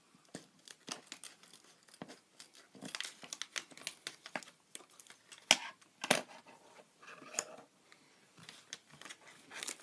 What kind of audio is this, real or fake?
real